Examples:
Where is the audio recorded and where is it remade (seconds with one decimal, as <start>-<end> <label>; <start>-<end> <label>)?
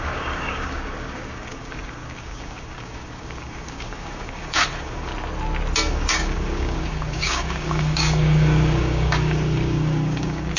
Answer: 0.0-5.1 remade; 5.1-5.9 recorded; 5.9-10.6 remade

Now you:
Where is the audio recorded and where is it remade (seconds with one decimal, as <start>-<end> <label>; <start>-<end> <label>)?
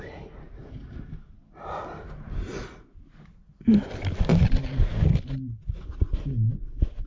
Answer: 0.0-7.1 recorded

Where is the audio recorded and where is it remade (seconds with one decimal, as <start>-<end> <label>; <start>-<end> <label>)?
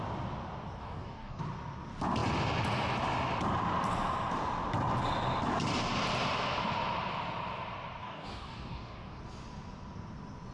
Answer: 0.0-0.8 recorded; 0.8-1.4 remade; 1.4-8.0 recorded; 8.0-9.2 remade; 9.2-10.5 recorded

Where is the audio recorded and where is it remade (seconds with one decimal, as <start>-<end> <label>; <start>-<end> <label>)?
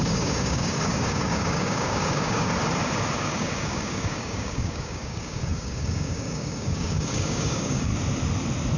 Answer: 0.0-2.5 remade; 2.5-3.2 recorded; 3.2-7.9 remade; 7.9-8.8 recorded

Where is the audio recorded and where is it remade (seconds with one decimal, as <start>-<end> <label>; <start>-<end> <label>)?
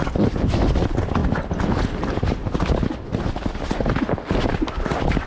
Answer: 0.0-5.3 recorded